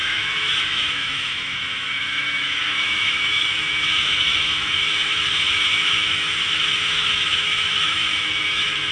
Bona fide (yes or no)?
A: no